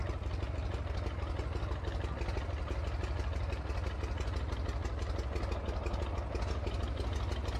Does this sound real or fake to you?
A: real